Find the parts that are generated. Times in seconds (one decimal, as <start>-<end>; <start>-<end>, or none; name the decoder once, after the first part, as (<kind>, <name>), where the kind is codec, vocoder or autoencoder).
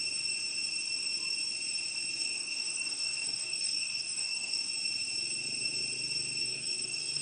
2.2-4.6 (codec, DAC); 6.4-7.2